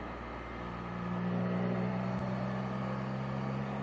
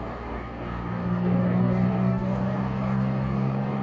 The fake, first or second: second